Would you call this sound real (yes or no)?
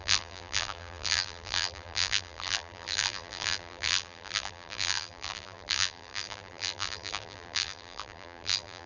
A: no